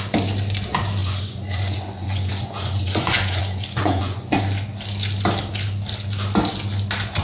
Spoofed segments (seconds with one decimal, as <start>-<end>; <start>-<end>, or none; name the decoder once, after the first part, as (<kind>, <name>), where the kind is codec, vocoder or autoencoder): 1.0-4.4 (vocoder, Vocos)